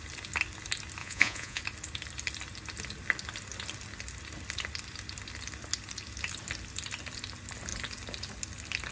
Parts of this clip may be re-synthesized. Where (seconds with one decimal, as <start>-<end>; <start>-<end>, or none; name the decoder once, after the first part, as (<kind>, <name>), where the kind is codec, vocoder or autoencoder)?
1.0-1.6 (vocoder, Vocos)